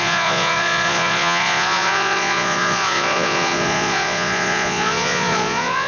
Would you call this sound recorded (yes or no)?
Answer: no